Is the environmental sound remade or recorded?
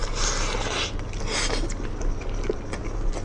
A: recorded